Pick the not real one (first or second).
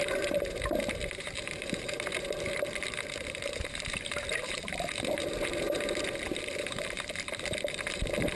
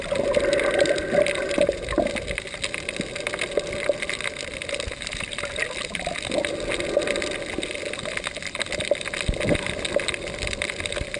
first